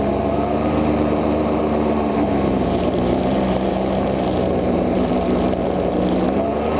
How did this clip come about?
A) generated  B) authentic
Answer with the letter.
A